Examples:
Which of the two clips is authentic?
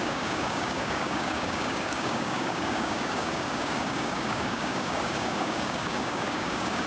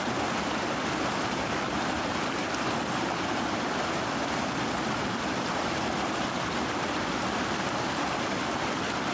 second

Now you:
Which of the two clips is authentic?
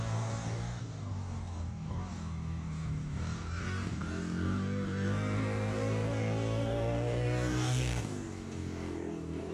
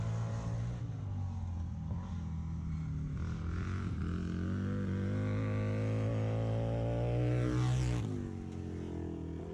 second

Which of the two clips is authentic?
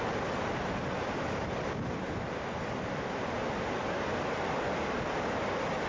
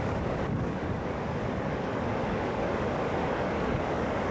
first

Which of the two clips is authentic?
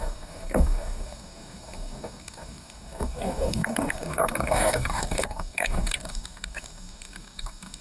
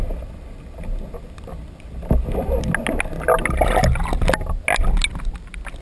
second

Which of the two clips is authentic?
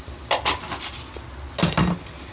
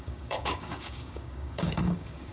first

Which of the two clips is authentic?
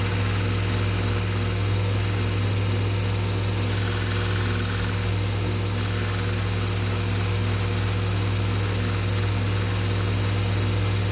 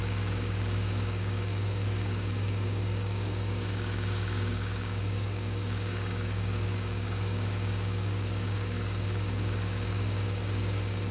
first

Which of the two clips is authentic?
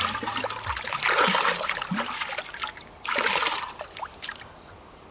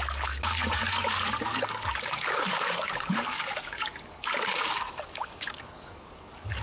first